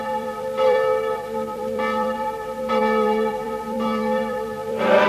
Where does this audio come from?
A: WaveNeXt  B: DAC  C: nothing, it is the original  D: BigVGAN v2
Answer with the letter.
D